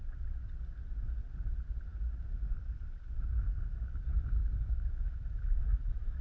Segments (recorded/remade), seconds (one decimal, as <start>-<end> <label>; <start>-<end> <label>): 0.0-4.4 recorded; 4.4-6.2 remade